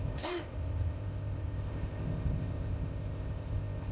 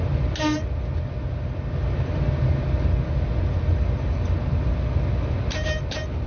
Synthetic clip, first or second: first